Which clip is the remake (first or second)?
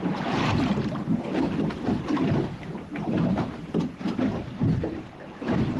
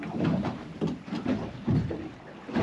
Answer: first